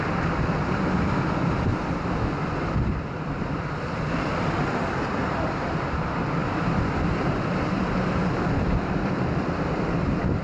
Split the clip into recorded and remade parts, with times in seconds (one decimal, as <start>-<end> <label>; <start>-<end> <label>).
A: 0.0-1.7 recorded; 1.7-4.2 remade; 4.2-6.4 recorded; 6.4-9.9 remade; 9.9-10.4 recorded